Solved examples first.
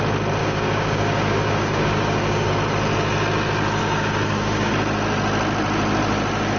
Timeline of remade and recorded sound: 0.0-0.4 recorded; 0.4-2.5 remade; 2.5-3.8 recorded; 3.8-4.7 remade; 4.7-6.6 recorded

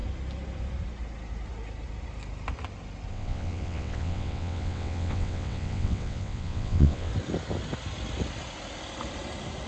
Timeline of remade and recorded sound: 0.0-3.1 recorded; 3.1-7.1 remade; 7.1-9.7 recorded

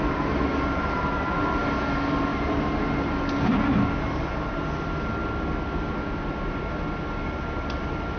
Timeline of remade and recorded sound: 0.0-8.2 recorded